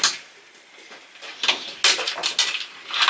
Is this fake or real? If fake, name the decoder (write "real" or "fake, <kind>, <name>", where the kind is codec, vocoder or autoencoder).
real